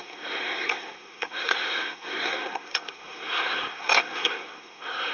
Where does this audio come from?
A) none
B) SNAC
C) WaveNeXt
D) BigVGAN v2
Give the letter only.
B